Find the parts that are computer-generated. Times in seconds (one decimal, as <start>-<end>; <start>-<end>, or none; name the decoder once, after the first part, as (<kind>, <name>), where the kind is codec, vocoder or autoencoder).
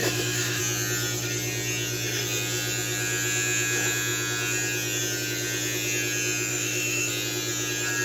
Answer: 0.0-0.6 (autoencoder, DAC-VAE); 6.5-7.1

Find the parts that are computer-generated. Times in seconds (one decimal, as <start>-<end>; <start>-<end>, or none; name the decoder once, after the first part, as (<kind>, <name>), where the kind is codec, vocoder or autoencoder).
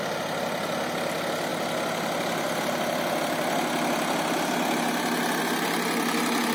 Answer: none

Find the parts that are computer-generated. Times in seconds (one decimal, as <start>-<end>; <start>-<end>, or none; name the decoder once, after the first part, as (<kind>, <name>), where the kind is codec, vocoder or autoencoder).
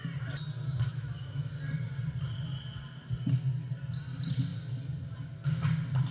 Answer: 0.9-1.5 (autoencoder, DAC-VAE)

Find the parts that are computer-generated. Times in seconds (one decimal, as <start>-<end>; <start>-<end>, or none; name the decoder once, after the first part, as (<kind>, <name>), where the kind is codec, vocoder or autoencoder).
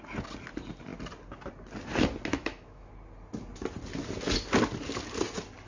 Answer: 2.3-2.9 (autoencoder, DAC-VAE)